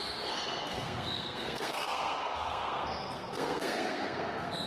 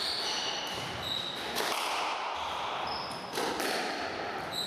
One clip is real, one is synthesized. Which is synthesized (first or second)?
first